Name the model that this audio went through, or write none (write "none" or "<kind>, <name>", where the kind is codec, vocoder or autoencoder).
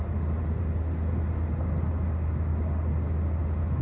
none